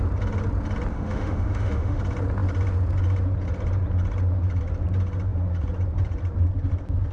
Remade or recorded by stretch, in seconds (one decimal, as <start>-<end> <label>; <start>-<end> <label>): 0.0-0.9 recorded; 0.9-2.0 remade; 2.0-7.1 recorded